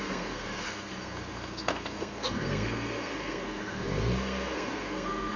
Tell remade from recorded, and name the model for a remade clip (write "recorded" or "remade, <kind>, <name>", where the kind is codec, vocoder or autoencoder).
remade, codec, SNAC